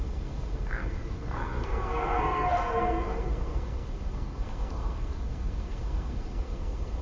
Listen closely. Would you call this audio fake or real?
fake